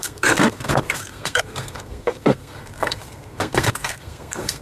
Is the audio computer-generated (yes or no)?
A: yes